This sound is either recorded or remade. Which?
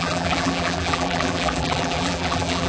remade